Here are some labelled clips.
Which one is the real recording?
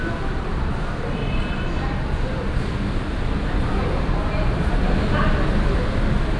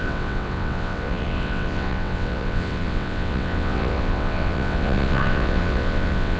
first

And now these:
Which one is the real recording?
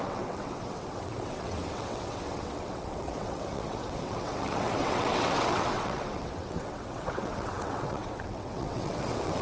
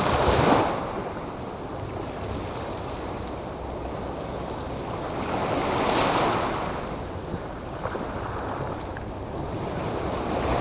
second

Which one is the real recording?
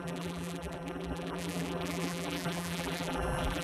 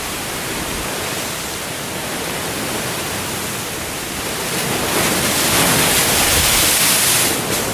second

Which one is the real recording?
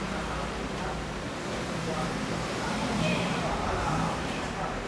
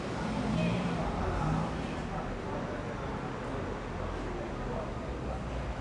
second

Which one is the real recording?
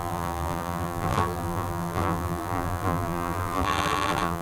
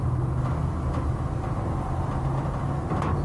second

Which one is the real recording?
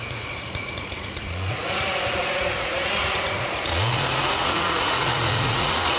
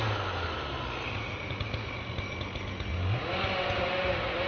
second